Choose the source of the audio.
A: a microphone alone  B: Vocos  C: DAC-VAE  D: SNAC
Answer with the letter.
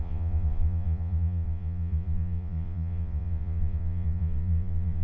B